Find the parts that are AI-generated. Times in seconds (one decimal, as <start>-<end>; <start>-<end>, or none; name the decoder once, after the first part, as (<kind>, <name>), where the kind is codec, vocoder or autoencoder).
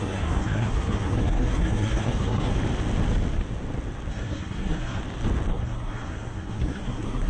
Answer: 0.0-2.5 (codec, SNAC); 4.1-5.0; 5.5-7.3